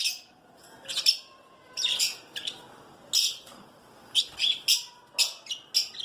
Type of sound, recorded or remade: recorded